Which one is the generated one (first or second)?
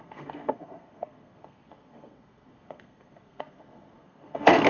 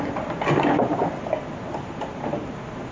first